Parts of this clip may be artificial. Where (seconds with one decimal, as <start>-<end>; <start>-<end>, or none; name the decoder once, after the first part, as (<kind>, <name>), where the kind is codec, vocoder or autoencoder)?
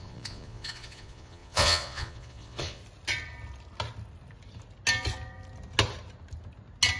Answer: 0.0-2.8 (vocoder, Vocos)